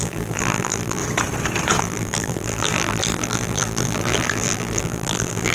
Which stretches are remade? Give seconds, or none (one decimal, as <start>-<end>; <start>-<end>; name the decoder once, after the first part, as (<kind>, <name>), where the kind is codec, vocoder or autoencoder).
0.0-1.0 (vocoder, BigVGAN v2); 1.8-5.5

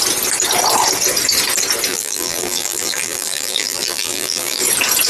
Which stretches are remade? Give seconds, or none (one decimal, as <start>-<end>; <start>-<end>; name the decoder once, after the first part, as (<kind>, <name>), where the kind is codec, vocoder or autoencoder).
1.9-4.6 (vocoder, BigVGAN v2)

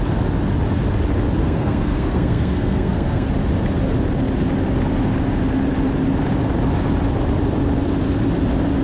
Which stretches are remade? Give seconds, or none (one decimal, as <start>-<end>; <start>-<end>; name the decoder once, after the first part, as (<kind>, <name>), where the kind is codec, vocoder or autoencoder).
1.4-3.3 (codec, SNAC)

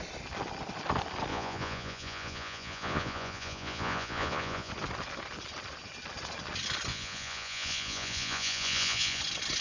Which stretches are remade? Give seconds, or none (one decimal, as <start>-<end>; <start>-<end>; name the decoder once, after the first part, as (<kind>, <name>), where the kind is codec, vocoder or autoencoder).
1.3-4.7 (vocoder, Vocos); 6.9-9.2

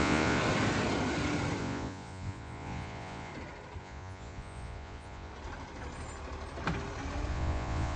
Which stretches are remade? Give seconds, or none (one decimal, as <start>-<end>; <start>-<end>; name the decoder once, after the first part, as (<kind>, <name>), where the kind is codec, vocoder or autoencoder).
0.0-0.4 (vocoder, Vocos); 1.6-3.3; 3.8-5.3; 7.3-8.0

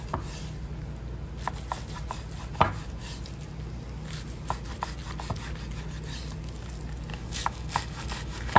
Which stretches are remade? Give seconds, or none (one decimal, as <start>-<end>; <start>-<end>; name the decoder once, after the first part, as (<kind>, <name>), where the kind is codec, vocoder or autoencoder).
7.1-8.6 (codec, DAC)

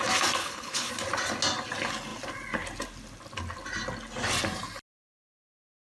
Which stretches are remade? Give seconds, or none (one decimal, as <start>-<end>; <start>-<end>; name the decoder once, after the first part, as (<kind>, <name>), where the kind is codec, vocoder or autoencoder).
0.4-0.9 (codec, HILCodec)